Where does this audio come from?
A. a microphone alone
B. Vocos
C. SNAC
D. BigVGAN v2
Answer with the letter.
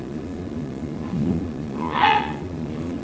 B